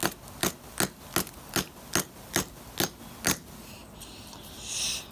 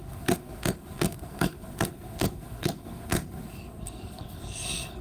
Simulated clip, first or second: second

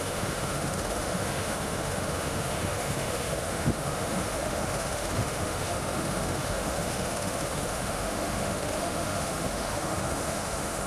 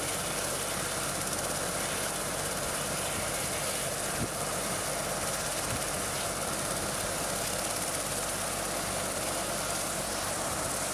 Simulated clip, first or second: first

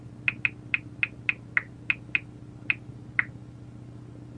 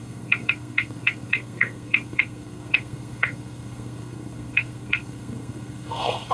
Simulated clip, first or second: second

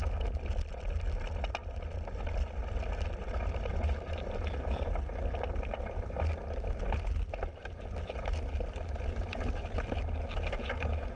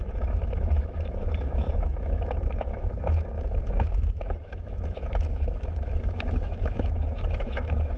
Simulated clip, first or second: second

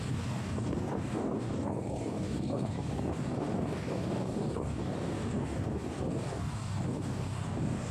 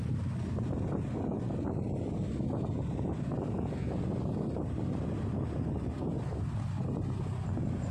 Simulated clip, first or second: first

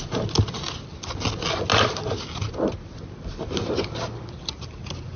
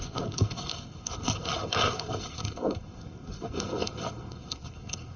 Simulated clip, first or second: second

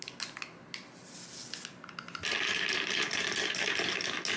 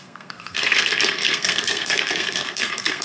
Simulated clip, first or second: second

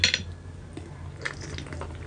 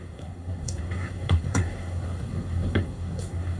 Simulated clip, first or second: second